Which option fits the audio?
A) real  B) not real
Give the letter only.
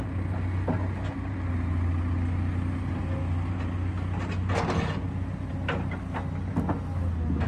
A